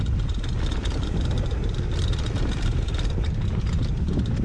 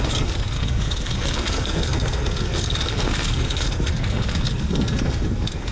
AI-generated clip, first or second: second